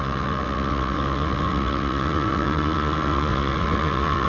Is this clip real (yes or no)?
no